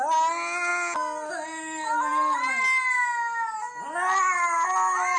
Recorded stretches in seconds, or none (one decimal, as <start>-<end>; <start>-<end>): 0.0-5.2